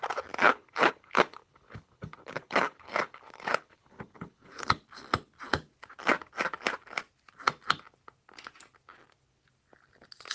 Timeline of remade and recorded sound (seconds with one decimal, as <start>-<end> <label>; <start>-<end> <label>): 0.0-0.4 recorded; 0.4-4.8 remade; 4.8-10.3 recorded